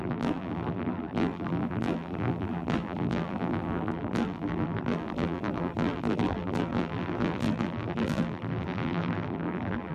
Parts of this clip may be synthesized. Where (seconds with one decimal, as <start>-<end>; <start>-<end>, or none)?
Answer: 0.0-9.9